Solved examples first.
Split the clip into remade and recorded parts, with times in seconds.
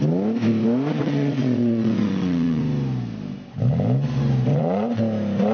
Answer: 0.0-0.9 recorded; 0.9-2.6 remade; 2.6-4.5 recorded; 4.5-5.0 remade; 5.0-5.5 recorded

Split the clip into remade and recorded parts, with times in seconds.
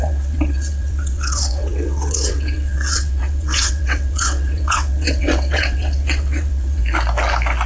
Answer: 0.0-6.8 remade; 6.8-7.7 recorded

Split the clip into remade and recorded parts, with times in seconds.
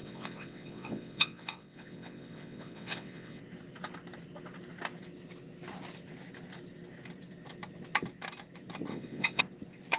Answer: 0.0-3.4 remade; 3.4-8.9 recorded; 8.9-9.4 remade; 9.4-10.0 recorded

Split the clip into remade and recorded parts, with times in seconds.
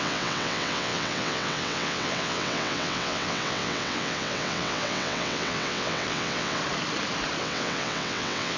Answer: 0.0-6.6 remade; 6.6-7.4 recorded; 7.4-8.6 remade